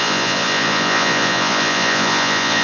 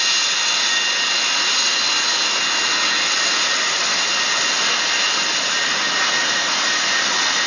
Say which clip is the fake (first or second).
first